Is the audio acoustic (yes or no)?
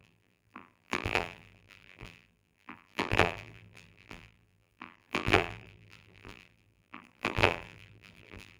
no